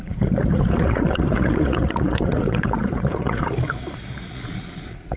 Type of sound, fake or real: fake